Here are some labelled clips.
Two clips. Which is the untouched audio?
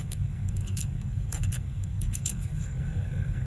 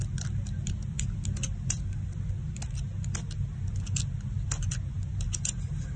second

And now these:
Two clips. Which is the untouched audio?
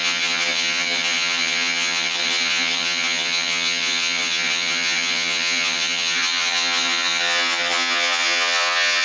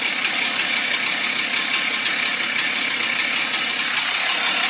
second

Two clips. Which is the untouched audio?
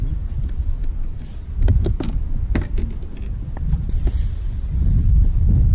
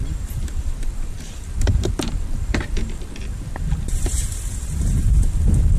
first